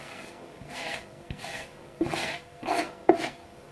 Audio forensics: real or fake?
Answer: fake